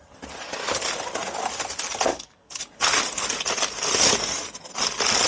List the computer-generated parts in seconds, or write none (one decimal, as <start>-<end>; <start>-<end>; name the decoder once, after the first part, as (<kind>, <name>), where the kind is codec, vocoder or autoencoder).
2.1-2.6 (codec, DAC)

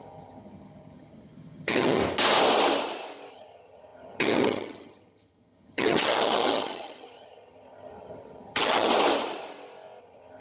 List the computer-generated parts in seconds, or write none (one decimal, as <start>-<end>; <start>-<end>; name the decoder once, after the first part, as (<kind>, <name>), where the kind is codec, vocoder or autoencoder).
0.0-2.0 (vocoder, HiFi-GAN); 3.3-8.9; 10.0-10.4

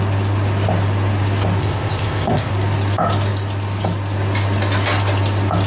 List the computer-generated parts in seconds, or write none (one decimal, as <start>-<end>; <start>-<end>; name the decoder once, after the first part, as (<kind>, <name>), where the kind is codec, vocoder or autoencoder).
1.6-2.5 (codec, ZipCodec)